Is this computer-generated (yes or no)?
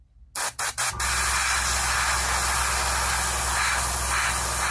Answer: no